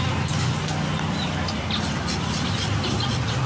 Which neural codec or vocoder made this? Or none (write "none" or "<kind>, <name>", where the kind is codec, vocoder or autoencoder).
none